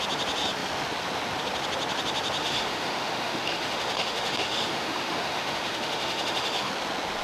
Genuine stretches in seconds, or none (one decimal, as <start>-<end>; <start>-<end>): 0.0-2.4; 6.7-7.2